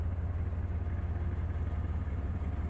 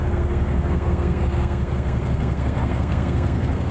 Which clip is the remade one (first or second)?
second